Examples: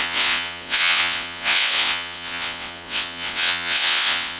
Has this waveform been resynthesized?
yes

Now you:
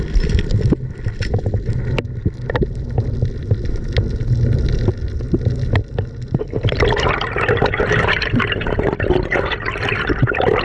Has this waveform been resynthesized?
no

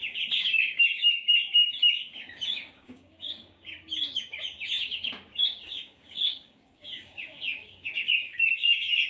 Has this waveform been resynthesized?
yes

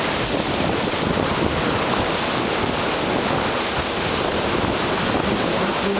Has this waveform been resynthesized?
no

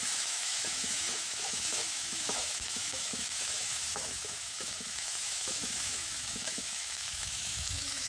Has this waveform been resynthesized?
yes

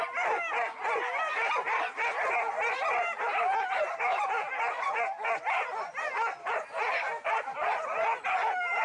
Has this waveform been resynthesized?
no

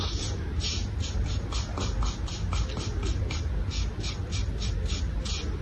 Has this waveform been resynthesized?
no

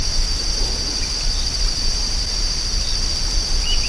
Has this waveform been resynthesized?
no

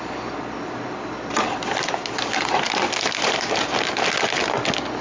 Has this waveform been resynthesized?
no